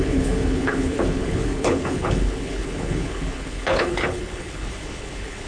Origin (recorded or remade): remade